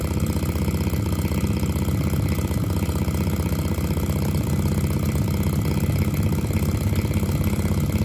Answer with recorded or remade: recorded